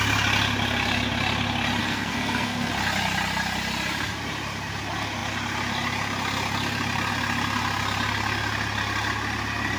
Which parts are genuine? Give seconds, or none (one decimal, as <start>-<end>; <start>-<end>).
0.0-1.8; 2.7-9.8